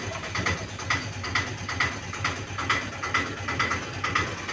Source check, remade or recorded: recorded